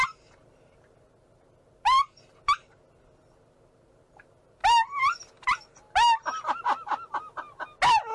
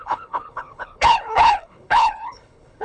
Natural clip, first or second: first